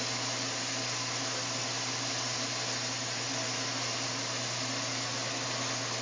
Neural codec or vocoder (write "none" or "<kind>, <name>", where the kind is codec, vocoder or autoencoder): none